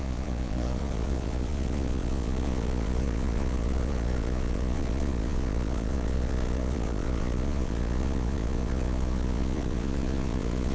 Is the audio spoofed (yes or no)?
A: yes